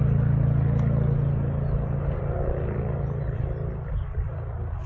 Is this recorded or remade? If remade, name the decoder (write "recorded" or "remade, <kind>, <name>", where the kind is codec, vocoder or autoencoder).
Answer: recorded